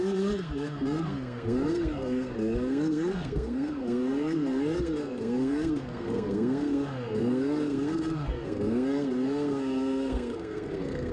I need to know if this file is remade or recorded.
remade